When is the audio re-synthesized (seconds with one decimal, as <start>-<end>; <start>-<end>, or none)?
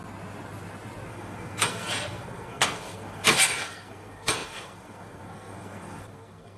1.1-6.6